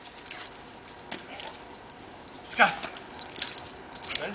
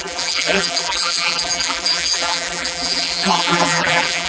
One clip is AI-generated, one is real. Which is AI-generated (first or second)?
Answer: second